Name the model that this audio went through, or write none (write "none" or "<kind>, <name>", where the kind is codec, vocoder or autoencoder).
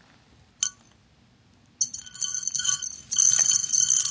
none